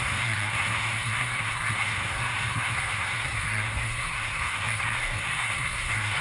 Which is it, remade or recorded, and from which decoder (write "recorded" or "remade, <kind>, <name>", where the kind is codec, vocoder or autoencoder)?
remade, codec, SNAC